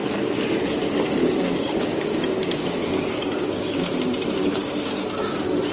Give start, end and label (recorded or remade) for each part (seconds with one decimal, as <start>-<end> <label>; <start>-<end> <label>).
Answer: 0.0-1.2 recorded; 1.2-3.8 remade; 3.8-5.7 recorded